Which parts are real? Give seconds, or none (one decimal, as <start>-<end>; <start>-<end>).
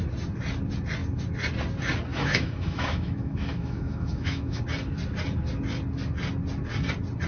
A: 0.0-2.1; 4.6-7.3